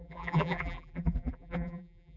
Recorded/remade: remade